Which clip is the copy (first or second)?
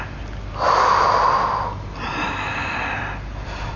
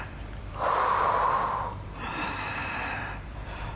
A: second